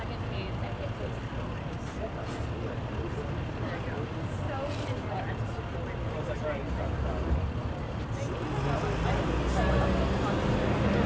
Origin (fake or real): real